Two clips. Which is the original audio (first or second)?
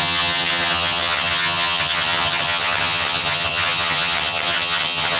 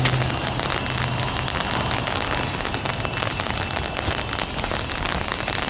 second